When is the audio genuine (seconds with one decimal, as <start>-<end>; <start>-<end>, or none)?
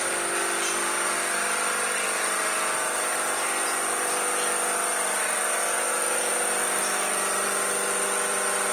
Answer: 6.3-6.8